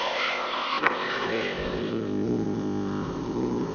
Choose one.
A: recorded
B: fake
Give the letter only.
B